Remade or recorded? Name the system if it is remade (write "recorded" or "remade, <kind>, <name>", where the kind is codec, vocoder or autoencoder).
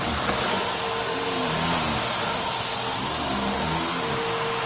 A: recorded